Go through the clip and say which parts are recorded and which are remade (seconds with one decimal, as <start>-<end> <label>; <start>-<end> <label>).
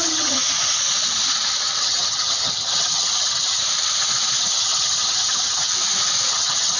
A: 0.0-0.4 remade; 0.4-1.8 recorded; 1.8-3.6 remade; 3.6-4.4 recorded; 4.4-5.7 remade; 5.7-6.3 recorded; 6.3-6.8 remade